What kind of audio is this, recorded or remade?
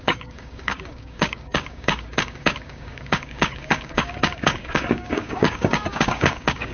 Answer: remade